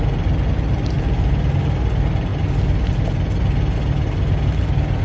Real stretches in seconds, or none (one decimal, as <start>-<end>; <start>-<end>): 0.0-5.0